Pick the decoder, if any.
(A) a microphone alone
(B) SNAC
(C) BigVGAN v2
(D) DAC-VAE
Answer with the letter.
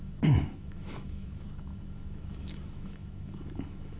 D